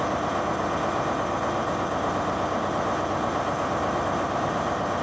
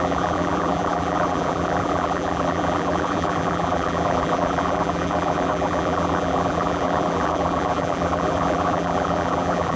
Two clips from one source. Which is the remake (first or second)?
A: second